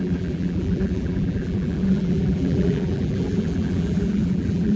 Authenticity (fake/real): fake